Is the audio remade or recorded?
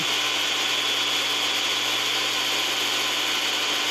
recorded